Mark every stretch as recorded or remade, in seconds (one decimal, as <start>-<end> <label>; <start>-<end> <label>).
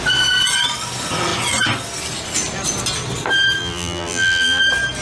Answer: 0.0-3.6 recorded; 3.6-4.6 remade; 4.6-5.0 recorded